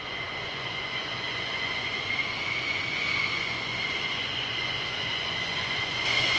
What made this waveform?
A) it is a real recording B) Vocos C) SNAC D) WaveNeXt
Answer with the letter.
B